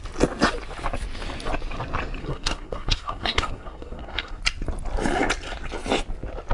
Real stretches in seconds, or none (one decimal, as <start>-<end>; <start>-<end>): 0.0-2.2; 4.4-6.5